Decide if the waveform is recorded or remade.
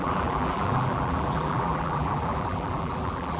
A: remade